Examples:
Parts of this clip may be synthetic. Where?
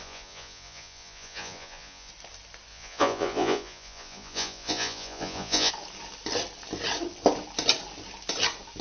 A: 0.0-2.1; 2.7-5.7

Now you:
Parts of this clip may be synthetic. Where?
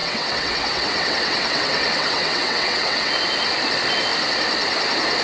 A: 0.0-3.1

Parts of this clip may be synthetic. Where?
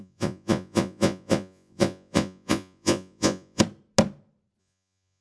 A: 0.0-3.6; 4.6-5.2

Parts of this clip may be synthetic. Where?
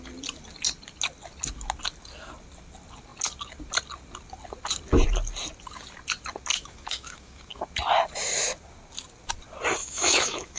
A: 6.5-7.6; 9.8-10.6